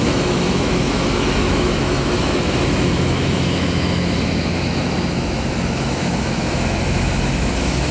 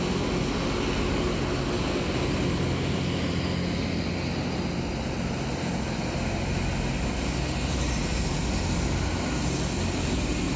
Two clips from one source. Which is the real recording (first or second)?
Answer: second